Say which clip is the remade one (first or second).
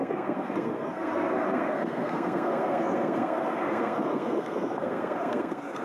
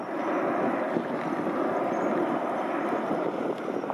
first